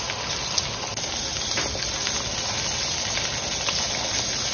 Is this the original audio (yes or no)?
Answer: yes